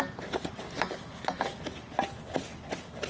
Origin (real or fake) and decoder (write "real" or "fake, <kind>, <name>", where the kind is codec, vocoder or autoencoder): real